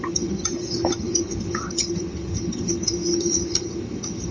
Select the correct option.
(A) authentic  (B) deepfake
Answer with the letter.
B